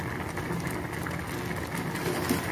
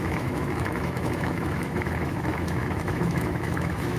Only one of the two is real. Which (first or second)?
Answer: first